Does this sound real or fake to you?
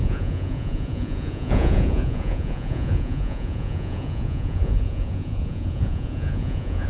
fake